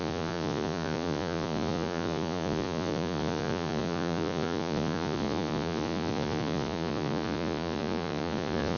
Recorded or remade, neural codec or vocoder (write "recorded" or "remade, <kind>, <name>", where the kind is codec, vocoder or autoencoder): remade, vocoder, Vocos